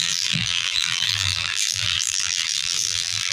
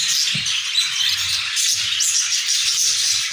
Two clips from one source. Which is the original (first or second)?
second